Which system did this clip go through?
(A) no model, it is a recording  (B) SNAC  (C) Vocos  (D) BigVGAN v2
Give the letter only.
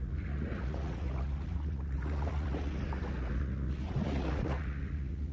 C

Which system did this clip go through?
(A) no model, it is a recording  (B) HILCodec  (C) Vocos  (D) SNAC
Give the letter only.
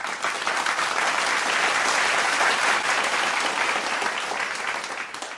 A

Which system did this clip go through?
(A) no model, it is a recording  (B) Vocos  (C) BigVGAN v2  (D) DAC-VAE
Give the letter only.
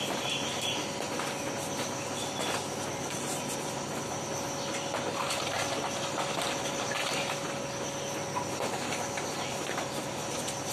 A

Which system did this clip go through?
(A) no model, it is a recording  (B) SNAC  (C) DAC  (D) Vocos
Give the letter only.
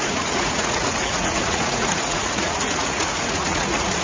D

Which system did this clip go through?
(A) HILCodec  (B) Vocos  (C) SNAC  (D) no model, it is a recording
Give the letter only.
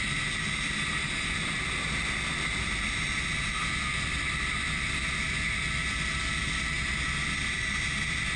D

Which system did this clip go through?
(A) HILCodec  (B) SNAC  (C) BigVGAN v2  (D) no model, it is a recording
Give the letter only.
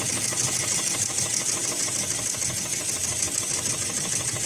D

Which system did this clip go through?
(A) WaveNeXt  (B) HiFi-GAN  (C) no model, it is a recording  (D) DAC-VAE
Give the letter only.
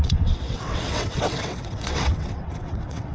A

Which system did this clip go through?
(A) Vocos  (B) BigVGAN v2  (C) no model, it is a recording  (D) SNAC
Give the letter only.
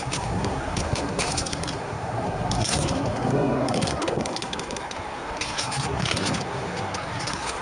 D